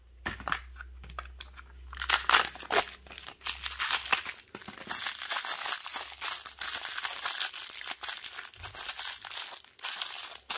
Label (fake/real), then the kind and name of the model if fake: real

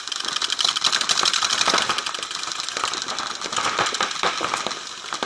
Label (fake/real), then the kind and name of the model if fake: real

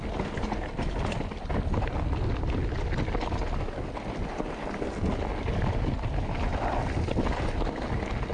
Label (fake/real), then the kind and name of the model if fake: real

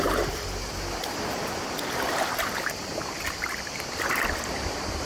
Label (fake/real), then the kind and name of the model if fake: real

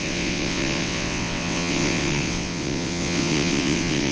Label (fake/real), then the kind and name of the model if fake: fake, vocoder, WaveNeXt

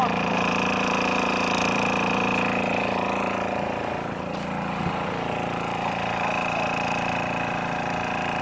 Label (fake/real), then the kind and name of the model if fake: real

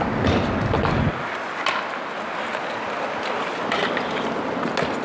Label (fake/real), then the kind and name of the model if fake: real